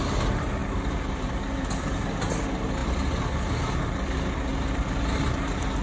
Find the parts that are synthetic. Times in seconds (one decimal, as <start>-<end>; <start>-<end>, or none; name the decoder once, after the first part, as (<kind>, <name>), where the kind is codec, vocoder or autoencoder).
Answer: none